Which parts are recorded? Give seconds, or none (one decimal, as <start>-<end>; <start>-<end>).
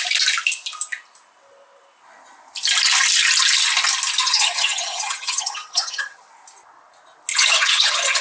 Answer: 0.0-4.2; 6.3-7.3